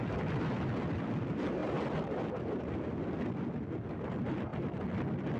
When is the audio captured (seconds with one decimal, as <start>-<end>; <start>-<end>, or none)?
0.0-1.6; 2.5-5.4

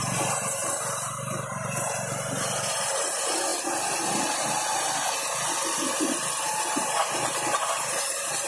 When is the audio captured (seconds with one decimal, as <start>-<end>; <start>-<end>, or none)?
3.5-6.4

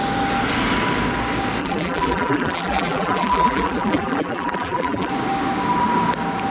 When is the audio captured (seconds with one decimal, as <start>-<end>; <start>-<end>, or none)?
0.0-1.6; 5.1-6.5

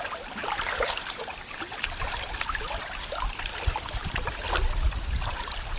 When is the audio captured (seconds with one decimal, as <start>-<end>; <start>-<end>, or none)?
none